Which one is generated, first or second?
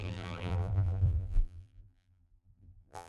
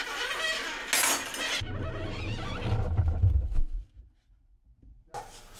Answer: first